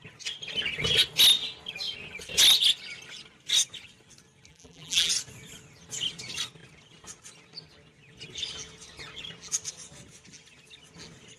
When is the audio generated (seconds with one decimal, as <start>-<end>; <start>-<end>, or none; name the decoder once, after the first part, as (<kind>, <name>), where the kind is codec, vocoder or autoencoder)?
4.5-5.1 (vocoder, BigVGAN v2)